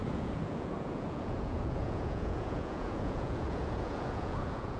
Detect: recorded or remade remade